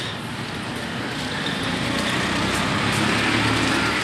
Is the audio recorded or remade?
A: recorded